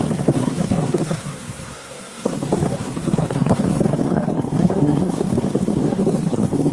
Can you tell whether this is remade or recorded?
remade